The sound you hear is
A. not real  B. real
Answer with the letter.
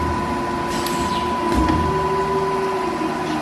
B